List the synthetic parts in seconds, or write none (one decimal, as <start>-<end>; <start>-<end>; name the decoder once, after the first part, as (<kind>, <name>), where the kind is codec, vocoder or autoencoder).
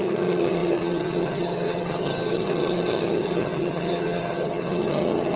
0.0-5.4 (vocoder, HiFi-GAN)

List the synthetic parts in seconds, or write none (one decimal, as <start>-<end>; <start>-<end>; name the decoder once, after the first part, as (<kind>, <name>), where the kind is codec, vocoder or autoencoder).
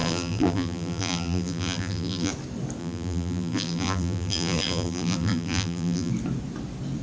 0.0-2.3 (vocoder, BigVGAN v2); 2.8-6.1